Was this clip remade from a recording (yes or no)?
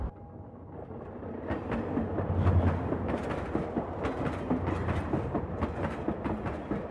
no